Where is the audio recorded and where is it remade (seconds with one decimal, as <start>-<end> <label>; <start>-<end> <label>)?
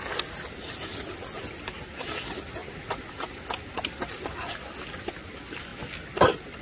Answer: 0.0-6.6 recorded